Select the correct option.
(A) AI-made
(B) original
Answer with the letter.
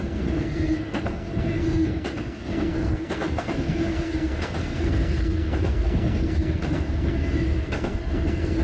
A